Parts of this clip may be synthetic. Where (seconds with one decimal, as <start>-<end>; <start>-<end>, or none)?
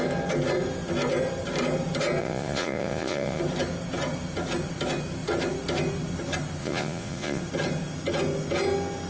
2.2-3.4; 6.6-7.4